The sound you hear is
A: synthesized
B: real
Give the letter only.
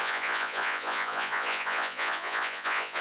A